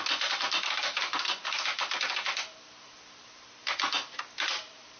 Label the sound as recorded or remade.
recorded